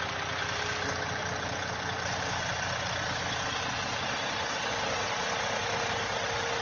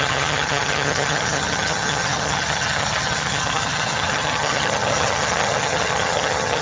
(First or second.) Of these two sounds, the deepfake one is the second